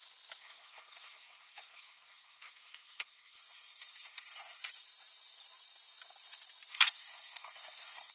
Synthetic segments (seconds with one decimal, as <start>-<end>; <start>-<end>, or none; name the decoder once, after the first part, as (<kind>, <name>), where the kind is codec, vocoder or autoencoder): 0.4-4.6 (codec, SNAC); 6.7-8.1